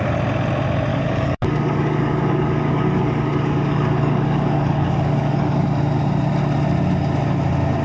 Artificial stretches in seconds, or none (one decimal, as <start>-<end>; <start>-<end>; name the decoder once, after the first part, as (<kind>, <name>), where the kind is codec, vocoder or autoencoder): 0.9-5.6 (codec, DAC)

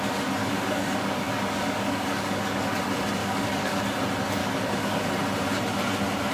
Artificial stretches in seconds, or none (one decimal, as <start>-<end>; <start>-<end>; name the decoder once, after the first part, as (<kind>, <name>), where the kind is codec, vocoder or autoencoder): 0.4-2.8 (codec, DAC); 3.2-3.8; 4.4-5.1

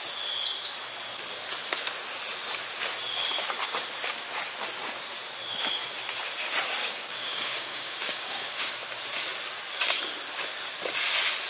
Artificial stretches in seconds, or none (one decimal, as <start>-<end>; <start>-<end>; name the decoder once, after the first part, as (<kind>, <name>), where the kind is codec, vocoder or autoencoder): 6.8-8.7 (codec, DAC)

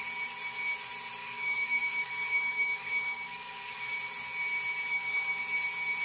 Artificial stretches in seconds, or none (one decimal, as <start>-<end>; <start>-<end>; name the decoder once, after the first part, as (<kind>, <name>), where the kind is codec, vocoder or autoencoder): 1.2-3.8 (codec, DAC); 4.9-5.4